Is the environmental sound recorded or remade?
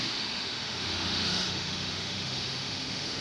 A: remade